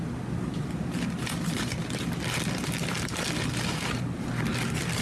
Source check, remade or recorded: recorded